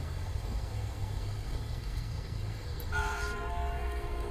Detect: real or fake fake